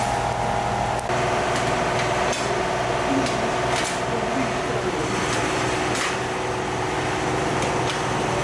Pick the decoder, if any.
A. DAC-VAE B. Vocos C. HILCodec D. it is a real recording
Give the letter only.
D